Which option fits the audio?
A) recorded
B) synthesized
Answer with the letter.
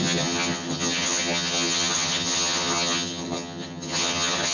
B